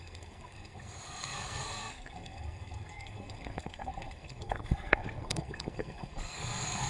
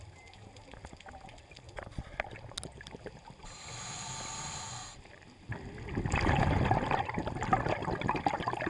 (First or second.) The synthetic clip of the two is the first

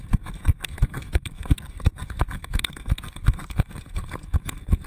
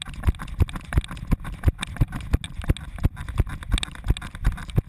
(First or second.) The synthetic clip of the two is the first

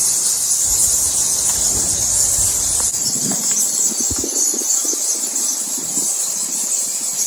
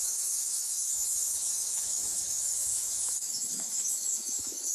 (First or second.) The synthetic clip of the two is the second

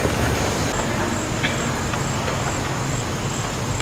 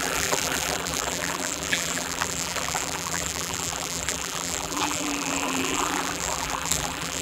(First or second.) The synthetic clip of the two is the second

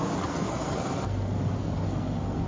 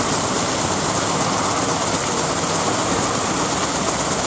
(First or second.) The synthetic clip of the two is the first